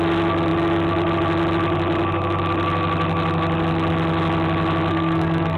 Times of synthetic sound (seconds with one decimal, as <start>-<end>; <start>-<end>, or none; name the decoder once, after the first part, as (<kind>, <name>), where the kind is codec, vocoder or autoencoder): 4.9-5.6 (codec, SNAC)